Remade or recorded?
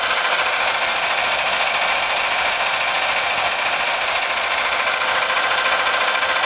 recorded